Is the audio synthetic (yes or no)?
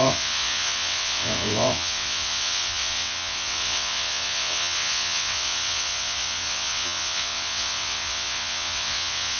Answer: yes